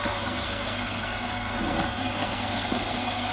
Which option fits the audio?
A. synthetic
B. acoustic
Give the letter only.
A